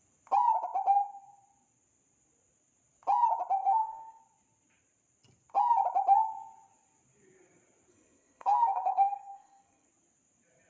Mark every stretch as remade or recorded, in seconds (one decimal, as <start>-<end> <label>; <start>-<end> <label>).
0.0-3.6 recorded; 3.6-4.2 remade; 4.2-7.9 recorded; 7.9-9.9 remade; 9.9-10.7 recorded